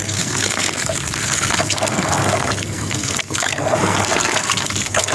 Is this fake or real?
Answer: fake